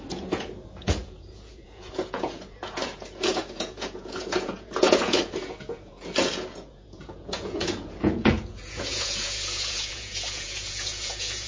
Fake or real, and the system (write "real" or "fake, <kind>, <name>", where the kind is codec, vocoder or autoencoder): fake, vocoder, Vocos